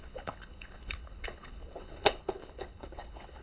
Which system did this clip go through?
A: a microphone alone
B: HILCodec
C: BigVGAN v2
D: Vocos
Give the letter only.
B